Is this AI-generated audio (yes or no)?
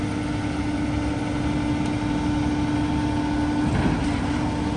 no